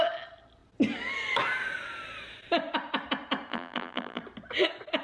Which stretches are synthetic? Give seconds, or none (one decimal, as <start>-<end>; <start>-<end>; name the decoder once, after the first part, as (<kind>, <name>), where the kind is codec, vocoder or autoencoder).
3.5-4.2 (vocoder, BigVGAN v2)